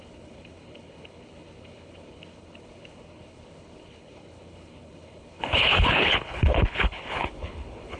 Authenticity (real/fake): fake